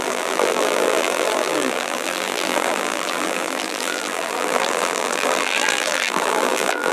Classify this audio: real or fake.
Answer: fake